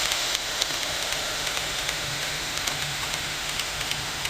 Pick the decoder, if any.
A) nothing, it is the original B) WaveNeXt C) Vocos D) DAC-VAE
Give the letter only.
D